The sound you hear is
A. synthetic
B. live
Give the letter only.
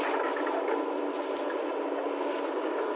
B